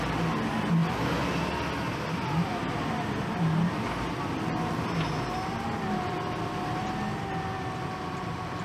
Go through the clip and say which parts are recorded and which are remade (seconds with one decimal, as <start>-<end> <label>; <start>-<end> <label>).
0.0-8.6 recorded